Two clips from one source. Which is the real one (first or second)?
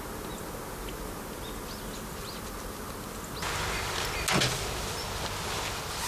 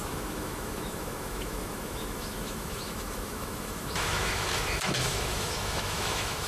first